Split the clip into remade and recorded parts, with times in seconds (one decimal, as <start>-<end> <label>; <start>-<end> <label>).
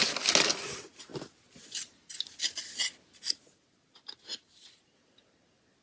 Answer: 0.0-1.1 recorded; 1.1-2.7 remade; 2.7-4.3 recorded; 4.3-5.0 remade; 5.0-5.8 recorded